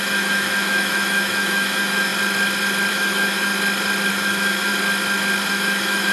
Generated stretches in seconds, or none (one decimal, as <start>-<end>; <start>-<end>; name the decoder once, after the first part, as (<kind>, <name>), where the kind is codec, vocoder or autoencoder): 0.0-2.1 (autoencoder, DAC-VAE); 2.9-3.5; 4.1-4.7; 5.5-6.1